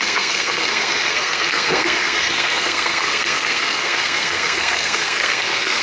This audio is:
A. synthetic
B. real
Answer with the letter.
A